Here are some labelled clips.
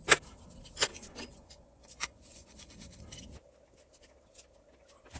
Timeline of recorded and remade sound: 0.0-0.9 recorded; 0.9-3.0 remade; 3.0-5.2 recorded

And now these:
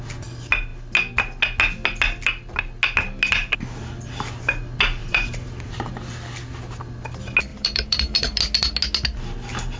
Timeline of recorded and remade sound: 0.0-5.0 recorded; 5.0-6.1 remade; 6.1-7.5 recorded; 7.5-8.4 remade; 8.4-9.8 recorded

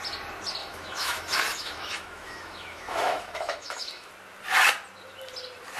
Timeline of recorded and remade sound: 0.0-0.6 recorded; 0.6-4.1 remade; 4.1-5.8 recorded